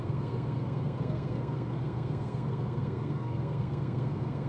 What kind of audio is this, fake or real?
fake